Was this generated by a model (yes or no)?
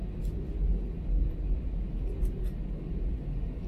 no